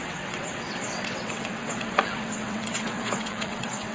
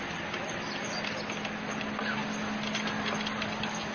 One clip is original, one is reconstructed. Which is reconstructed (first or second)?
first